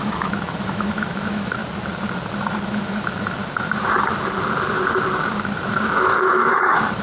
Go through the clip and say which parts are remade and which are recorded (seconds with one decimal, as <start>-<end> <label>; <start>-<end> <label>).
0.0-1.6 remade; 1.6-2.7 recorded; 2.7-3.4 remade; 3.4-5.6 recorded; 5.6-7.0 remade